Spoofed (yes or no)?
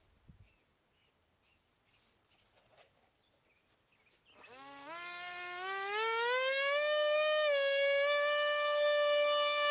no